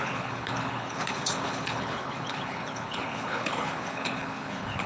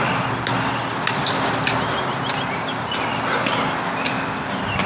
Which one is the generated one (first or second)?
first